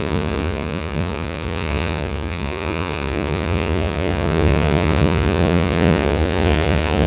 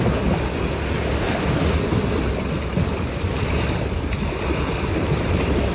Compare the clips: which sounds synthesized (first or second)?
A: first